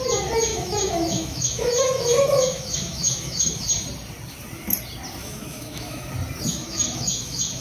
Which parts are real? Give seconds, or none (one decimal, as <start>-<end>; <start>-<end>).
0.0-0.5; 3.6-5.2; 6.1-6.5